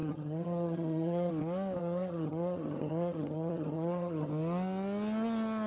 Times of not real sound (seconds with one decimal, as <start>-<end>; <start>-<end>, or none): 0.0-1.3; 1.8-4.3